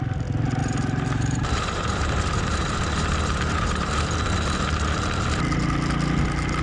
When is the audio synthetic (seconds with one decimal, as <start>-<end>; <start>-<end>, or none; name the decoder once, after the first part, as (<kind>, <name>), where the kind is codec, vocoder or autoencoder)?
0.6-4.1 (vocoder, BigVGAN v2)